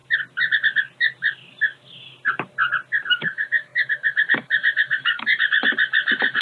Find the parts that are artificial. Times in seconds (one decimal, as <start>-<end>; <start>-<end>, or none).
3.1-6.4